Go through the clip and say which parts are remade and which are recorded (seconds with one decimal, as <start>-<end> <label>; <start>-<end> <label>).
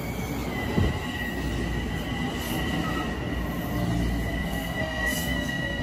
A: 0.0-4.4 recorded; 4.4-5.8 remade